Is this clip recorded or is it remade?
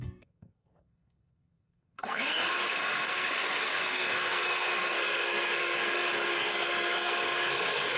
remade